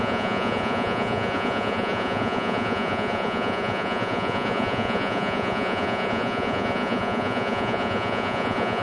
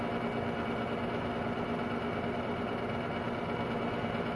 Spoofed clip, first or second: first